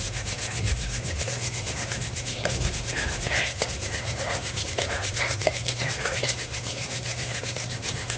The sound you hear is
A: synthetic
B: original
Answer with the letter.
A